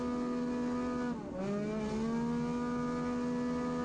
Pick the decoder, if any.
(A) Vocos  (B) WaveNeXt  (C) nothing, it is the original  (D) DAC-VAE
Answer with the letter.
C